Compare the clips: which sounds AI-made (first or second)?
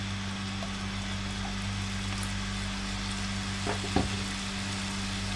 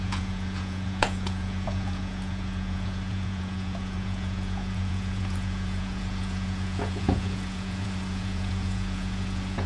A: second